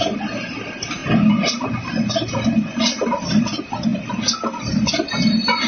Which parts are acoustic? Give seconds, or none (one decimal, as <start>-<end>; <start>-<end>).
0.0-5.7